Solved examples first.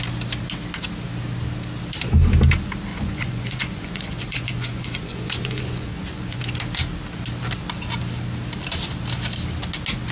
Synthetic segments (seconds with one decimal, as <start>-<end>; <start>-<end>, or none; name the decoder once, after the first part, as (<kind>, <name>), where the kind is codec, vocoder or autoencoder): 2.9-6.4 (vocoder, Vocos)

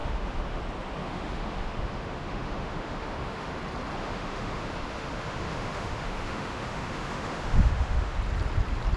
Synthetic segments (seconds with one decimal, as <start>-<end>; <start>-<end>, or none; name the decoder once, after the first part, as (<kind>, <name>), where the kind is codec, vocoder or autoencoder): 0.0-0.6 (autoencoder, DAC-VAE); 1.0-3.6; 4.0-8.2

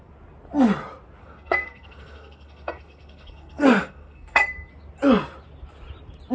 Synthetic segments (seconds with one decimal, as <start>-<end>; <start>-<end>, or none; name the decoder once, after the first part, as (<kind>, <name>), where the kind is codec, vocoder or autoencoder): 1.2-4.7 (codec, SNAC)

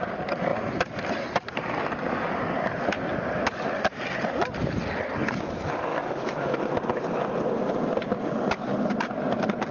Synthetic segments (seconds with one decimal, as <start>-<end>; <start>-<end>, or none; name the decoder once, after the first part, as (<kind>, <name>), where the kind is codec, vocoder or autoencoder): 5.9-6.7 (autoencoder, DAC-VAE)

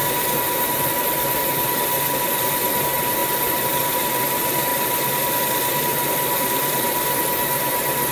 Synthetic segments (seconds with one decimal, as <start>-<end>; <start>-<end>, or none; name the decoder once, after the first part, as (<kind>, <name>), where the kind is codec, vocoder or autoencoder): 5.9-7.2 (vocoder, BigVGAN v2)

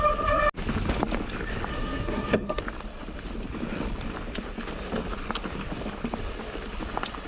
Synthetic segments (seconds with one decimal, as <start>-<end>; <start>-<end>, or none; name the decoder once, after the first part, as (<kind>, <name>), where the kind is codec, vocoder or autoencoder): 1.7-2.6 (codec, SNAC)